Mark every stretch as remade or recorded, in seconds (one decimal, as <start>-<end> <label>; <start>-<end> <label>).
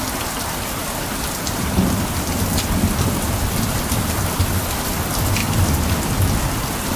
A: 0.0-0.8 recorded; 0.8-4.4 remade; 4.4-5.4 recorded; 5.4-6.6 remade; 6.6-7.0 recorded